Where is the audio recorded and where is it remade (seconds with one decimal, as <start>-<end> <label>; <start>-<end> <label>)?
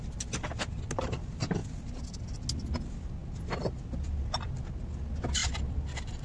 0.0-6.2 recorded